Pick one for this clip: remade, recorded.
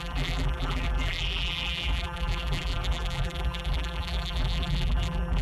remade